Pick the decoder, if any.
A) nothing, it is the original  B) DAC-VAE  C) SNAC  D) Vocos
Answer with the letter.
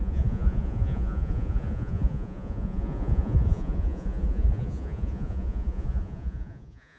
D